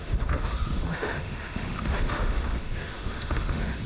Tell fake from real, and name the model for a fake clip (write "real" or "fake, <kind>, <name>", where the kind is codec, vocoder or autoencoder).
fake, autoencoder, DAC-VAE